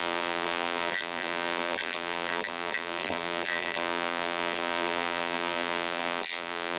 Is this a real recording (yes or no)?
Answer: no